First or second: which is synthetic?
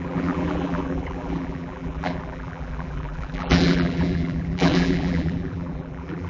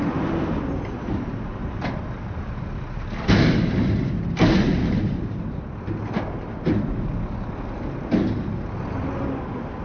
first